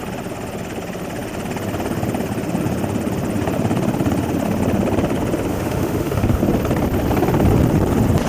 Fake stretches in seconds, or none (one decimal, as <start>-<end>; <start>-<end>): 5.5-6.4